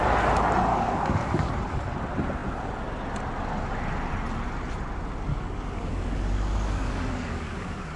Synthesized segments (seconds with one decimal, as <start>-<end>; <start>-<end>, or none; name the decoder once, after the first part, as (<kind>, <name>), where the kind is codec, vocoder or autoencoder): 0.7-1.5 (codec, DAC); 5.3-8.0